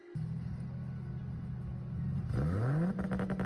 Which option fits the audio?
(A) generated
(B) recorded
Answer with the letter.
B